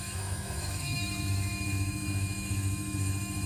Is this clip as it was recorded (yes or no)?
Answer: no